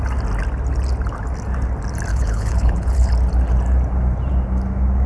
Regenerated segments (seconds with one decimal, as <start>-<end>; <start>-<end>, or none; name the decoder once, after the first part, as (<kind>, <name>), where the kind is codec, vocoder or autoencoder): 2.1-3.1 (codec, HILCodec)